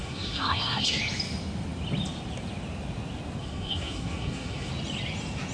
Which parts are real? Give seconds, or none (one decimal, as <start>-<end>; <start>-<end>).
1.0-3.4; 4.7-5.5